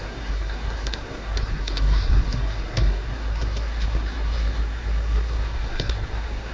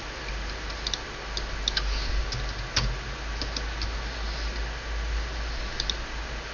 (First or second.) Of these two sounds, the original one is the second